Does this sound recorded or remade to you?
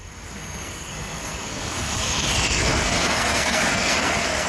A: remade